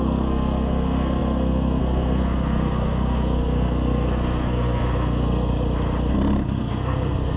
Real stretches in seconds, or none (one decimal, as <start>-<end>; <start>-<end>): 5.5-6.1